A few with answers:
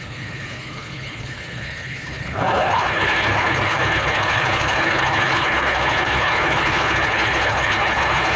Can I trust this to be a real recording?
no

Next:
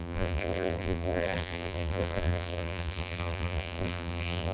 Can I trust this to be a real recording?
no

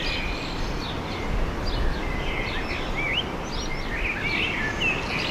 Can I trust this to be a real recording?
yes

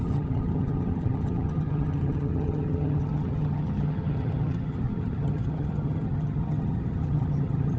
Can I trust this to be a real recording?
no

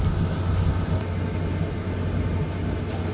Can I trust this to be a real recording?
yes